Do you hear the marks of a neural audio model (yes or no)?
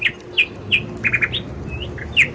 no